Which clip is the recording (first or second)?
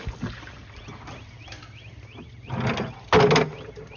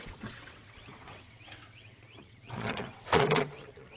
first